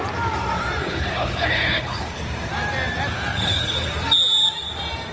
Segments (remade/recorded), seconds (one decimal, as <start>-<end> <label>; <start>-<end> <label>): 0.0-0.8 recorded; 0.8-2.2 remade; 2.2-3.3 recorded; 3.3-3.9 remade; 3.9-5.1 recorded